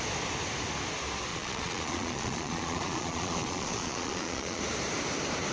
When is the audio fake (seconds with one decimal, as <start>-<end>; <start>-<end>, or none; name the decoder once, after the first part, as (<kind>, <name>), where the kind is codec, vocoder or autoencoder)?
1.3-4.6 (vocoder, Vocos)